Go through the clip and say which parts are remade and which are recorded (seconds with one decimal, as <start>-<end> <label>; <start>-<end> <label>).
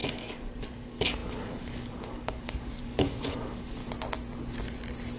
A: 0.0-3.8 remade; 3.8-5.2 recorded